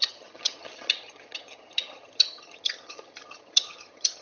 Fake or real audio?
fake